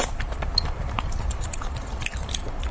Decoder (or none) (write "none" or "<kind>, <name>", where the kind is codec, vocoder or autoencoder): vocoder, BigVGAN v2